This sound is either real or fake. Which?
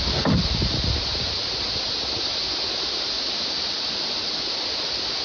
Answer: real